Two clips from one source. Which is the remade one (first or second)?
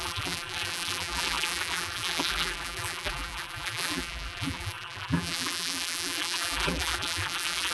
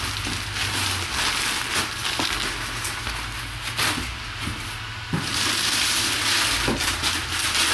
first